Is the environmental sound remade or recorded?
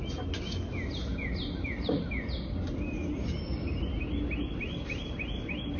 recorded